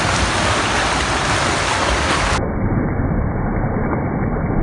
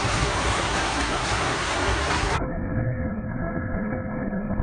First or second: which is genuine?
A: first